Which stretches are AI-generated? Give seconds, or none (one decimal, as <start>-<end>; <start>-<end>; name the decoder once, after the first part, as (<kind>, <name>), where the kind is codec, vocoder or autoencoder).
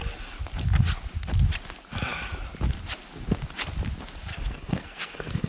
4.3-5.5 (codec, SNAC)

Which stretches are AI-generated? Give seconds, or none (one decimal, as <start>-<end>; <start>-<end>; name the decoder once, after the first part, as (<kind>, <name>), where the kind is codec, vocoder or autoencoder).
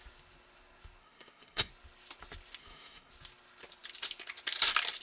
1.0-1.7 (codec, SNAC); 2.6-3.1